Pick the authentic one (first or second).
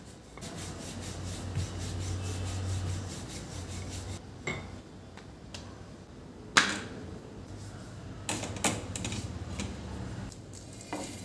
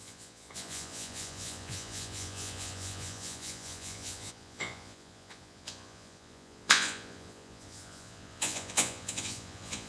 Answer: first